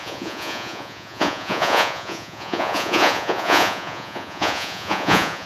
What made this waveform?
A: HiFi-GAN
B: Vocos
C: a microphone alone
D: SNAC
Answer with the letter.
B